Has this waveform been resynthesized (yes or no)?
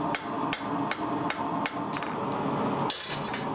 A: no